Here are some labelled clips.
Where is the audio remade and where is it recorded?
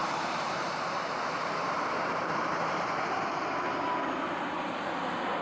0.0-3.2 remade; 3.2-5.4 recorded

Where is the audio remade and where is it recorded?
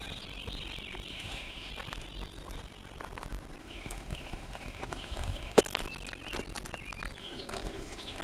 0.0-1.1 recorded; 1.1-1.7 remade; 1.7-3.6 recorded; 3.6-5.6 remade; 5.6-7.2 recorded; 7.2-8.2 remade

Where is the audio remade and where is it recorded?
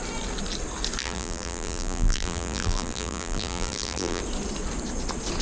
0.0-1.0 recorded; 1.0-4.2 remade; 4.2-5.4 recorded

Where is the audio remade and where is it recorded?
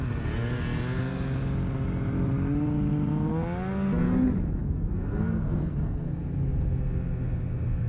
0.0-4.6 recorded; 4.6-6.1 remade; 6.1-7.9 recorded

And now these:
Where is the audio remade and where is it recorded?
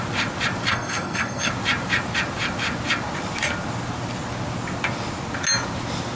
0.0-0.7 recorded; 0.7-1.5 remade; 1.5-6.2 recorded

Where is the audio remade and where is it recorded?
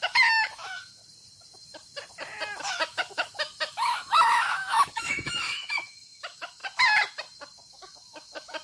0.0-1.0 remade; 1.0-2.7 recorded; 2.7-6.6 remade; 6.6-7.7 recorded; 7.7-8.6 remade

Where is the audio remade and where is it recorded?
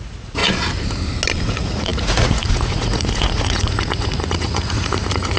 0.0-0.4 remade; 0.4-1.4 recorded; 1.4-5.4 remade